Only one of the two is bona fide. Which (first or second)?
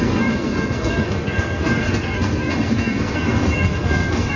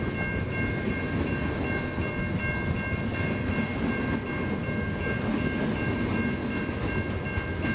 second